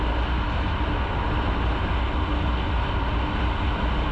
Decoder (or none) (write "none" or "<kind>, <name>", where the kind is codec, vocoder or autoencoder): none